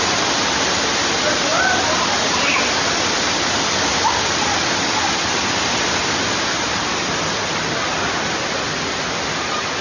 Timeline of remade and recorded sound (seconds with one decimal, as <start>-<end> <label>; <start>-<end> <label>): 0.0-9.8 recorded